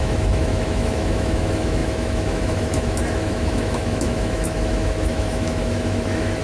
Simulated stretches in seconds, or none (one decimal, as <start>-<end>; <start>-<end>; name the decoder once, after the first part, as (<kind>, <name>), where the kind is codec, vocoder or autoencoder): 0.0-6.4 (autoencoder, DAC-VAE)